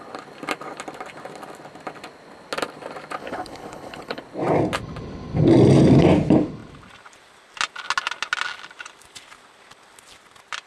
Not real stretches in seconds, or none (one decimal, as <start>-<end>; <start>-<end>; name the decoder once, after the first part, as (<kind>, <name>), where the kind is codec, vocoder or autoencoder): 3.2-4.2 (codec, HILCodec)